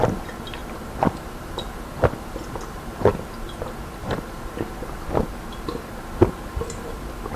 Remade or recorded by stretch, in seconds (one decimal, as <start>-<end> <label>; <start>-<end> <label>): 0.0-7.4 recorded